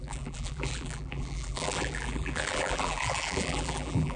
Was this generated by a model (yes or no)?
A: yes